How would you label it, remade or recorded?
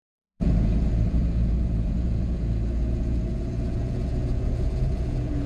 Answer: remade